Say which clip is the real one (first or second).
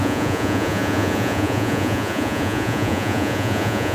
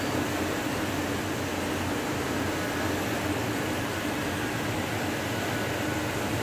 second